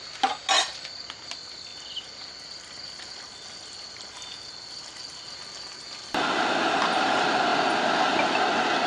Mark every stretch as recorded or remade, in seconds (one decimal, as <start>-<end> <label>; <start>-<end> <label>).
0.0-8.9 recorded